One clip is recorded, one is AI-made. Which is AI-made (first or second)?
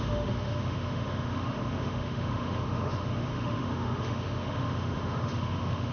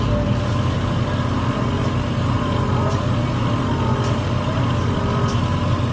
first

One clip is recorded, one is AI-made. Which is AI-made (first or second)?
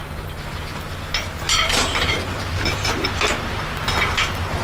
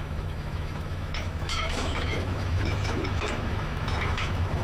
second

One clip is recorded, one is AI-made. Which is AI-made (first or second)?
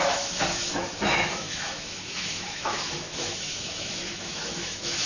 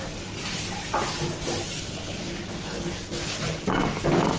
first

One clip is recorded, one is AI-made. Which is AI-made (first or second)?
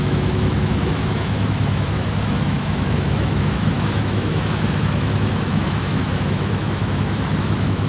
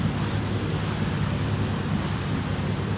first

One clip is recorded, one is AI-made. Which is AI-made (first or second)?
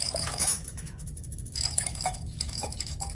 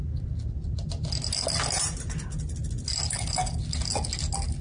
first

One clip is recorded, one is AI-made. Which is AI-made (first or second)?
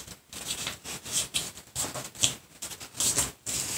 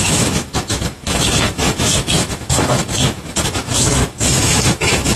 second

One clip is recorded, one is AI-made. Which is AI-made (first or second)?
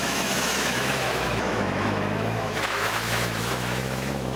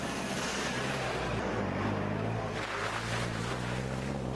first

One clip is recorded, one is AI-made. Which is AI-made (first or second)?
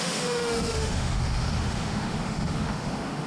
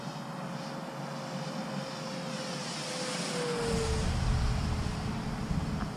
first